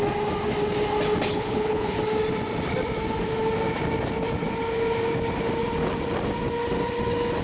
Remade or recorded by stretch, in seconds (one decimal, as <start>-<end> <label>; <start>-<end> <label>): 0.0-1.3 recorded; 1.3-2.0 remade; 2.0-7.4 recorded